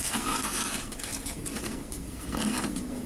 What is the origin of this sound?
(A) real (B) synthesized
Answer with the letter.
B